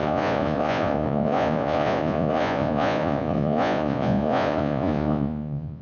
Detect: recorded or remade remade